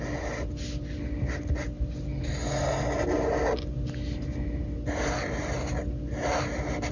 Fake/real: real